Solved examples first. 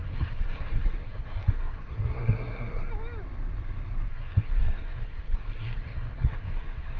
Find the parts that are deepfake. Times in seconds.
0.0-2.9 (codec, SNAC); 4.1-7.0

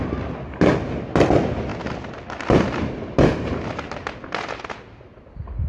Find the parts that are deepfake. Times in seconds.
none

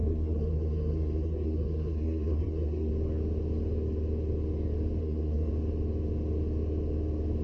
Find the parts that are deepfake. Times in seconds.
0.0-2.9 (codec, SNAC); 5.0-5.5